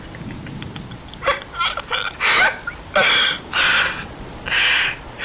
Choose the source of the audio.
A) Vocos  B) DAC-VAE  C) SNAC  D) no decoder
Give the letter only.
D